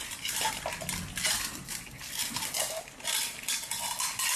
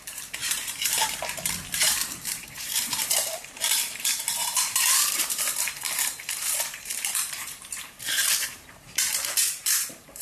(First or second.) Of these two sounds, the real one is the first